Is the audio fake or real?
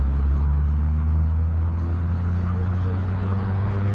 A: fake